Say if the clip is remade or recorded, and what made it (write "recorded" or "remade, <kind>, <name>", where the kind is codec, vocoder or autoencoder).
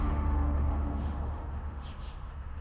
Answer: remade, autoencoder, DAC-VAE